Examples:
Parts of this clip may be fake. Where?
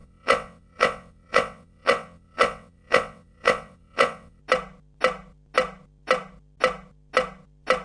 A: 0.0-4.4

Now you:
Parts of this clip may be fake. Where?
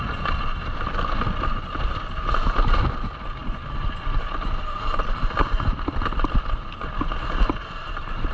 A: none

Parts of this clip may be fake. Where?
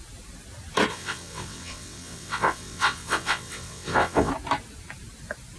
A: 0.9-4.3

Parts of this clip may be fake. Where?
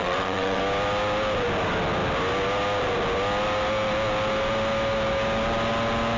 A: 0.0-0.6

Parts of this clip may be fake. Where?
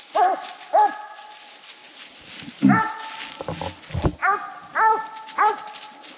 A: none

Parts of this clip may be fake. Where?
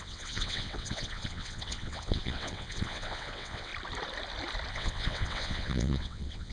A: 0.0-3.7; 4.7-6.5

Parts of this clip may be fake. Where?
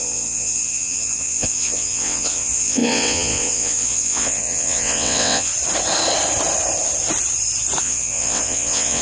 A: 0.0-5.5; 7.8-9.0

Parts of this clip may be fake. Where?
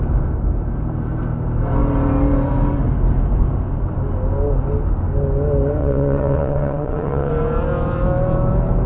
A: 5.8-7.3